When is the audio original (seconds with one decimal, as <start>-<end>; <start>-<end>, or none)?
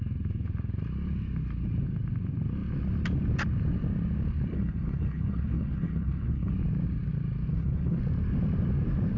0.0-4.5; 6.5-7.5; 8.0-9.2